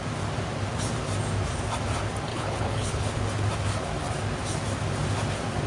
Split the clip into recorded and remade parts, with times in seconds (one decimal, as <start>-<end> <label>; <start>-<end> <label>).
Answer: 0.0-2.3 recorded; 2.3-3.2 remade; 3.2-5.7 recorded